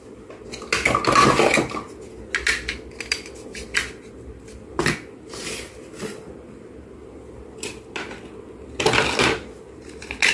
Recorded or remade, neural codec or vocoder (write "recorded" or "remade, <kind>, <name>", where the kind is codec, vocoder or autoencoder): recorded